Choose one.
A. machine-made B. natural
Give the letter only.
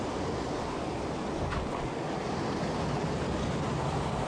B